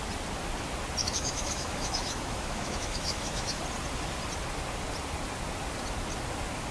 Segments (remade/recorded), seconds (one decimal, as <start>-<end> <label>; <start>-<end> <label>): 0.0-1.0 recorded; 1.0-3.6 remade; 3.6-6.7 recorded